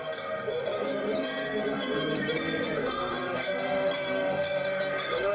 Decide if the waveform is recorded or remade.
remade